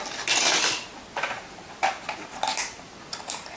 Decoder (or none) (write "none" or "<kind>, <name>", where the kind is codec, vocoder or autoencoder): none